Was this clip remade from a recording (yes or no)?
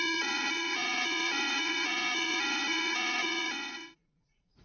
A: yes